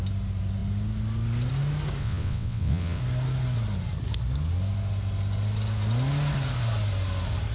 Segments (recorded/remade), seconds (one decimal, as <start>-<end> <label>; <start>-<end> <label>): 0.0-2.0 recorded; 2.0-3.0 remade; 3.0-7.5 recorded